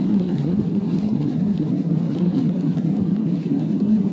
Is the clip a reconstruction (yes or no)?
yes